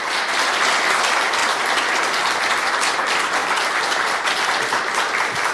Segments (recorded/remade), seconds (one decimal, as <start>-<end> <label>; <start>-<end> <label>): 0.0-5.5 recorded